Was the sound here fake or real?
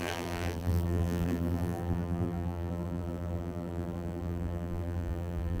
fake